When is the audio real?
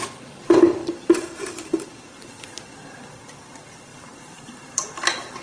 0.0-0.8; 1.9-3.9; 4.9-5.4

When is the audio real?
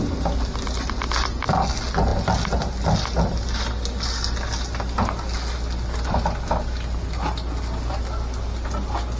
0.0-9.2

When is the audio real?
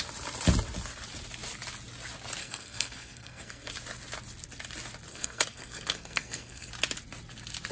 0.0-2.4; 3.7-5.1; 6.7-7.7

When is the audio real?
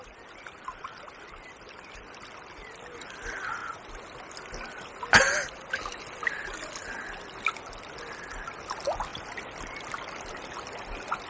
3.6-7.7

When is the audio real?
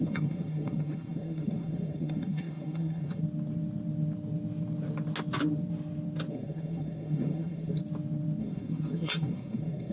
3.2-6.3; 7.8-8.4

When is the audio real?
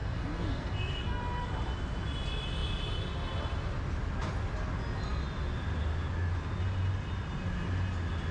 1.2-8.3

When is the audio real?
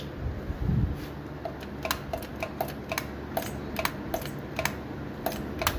0.0-5.8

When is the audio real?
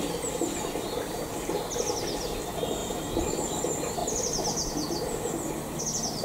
0.0-2.8; 3.6-6.2